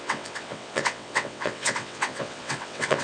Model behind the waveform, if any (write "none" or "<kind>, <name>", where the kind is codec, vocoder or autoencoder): vocoder, WaveNeXt